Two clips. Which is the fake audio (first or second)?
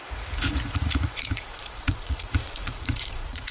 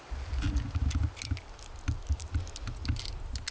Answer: first